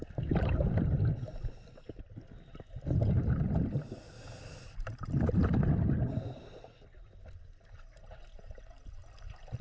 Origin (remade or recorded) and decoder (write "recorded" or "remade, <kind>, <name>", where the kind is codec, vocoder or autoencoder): recorded